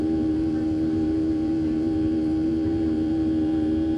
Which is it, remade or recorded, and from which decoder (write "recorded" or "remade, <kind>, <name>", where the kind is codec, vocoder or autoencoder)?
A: remade, vocoder, BigVGAN v2